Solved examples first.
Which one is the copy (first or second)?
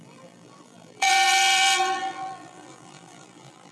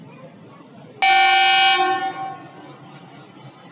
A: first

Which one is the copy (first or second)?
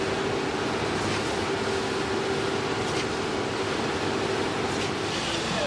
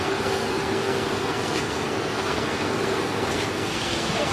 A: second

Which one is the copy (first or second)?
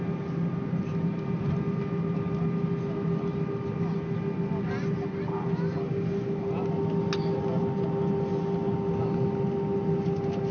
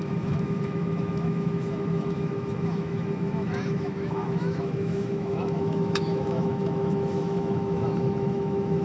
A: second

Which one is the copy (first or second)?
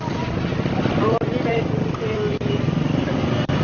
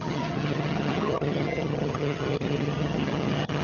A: second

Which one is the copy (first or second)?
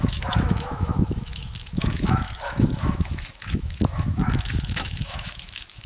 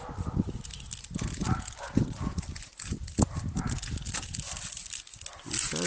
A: first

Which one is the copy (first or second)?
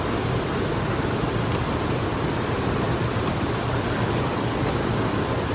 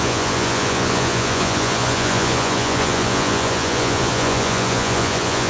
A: second